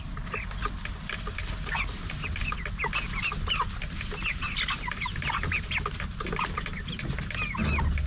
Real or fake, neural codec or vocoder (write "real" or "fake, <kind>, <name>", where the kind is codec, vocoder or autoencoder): real